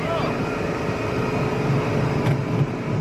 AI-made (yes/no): no